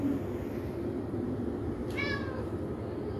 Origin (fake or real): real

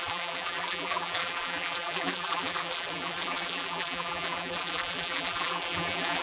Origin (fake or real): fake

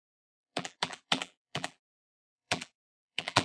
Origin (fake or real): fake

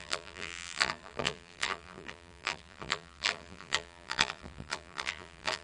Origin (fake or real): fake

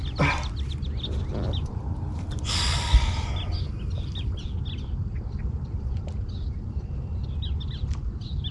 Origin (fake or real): real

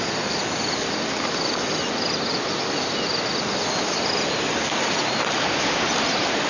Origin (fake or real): real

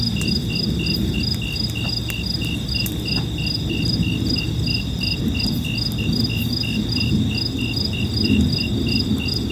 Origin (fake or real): real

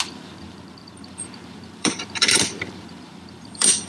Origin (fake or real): fake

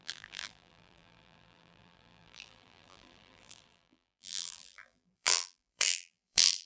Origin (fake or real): fake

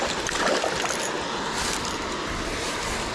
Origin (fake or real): real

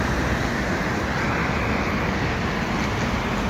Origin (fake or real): real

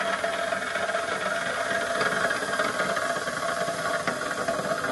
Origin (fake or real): real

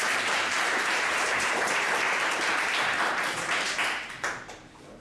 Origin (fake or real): fake